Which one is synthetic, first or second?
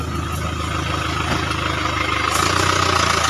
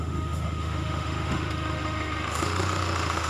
second